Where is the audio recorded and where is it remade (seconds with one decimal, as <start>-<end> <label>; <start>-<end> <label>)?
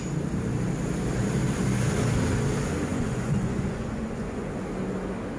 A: 0.0-2.9 recorded; 2.9-4.5 remade; 4.5-5.4 recorded